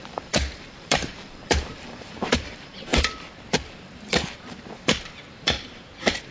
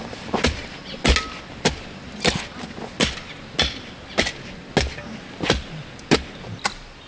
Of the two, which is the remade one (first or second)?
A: first